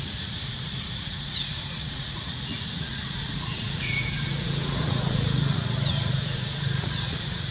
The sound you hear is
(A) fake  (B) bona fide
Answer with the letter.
A